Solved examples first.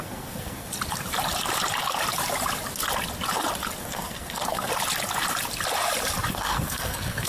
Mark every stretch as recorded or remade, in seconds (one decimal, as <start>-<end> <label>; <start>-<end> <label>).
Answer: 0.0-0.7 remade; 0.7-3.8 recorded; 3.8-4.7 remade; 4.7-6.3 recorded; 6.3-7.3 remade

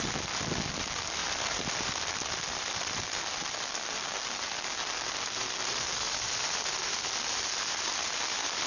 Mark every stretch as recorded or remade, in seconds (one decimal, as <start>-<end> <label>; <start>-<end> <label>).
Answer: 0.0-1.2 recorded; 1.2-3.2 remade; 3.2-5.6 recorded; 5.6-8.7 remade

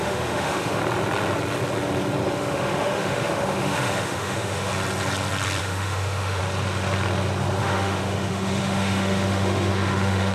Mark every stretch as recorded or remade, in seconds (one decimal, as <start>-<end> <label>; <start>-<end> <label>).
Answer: 0.0-0.8 remade; 0.8-2.3 recorded; 2.3-4.7 remade; 4.7-5.6 recorded; 5.6-6.4 remade; 6.4-7.6 recorded; 7.6-10.3 remade